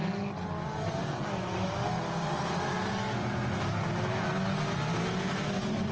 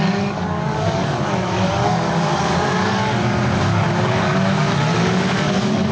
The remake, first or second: second